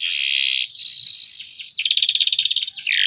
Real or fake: real